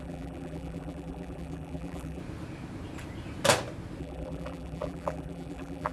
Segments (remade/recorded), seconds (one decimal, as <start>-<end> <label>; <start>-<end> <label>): 0.0-2.2 remade; 2.2-4.0 recorded; 4.0-5.9 remade

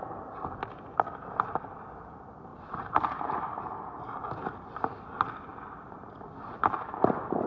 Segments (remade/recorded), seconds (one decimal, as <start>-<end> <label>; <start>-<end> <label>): 0.0-2.5 recorded; 2.5-3.2 remade; 3.2-5.5 recorded; 5.5-6.0 remade; 6.0-7.5 recorded

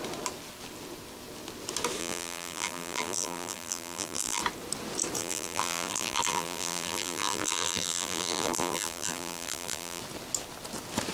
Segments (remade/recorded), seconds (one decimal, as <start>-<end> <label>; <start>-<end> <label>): 0.0-2.0 recorded; 2.0-4.4 remade; 4.4-5.2 recorded; 5.2-10.0 remade; 10.0-11.1 recorded

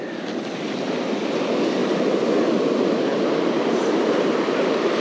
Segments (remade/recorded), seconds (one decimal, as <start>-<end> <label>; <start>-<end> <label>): 0.0-1.8 recorded; 1.8-5.0 remade

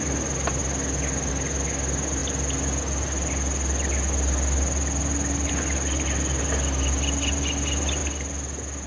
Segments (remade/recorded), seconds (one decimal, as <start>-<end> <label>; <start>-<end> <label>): 0.0-2.2 recorded; 2.2-5.5 remade; 5.5-8.0 recorded; 8.0-8.9 remade

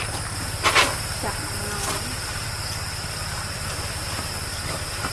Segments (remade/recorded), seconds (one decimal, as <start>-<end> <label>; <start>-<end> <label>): 0.0-2.3 recorded; 2.3-5.1 remade

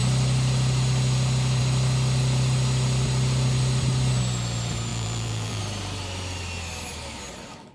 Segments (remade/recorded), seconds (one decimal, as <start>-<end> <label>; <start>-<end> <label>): 0.0-4.9 recorded; 4.9-5.6 remade; 5.6-7.7 recorded